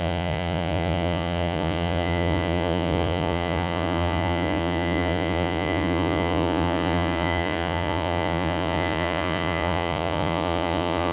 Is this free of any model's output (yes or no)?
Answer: no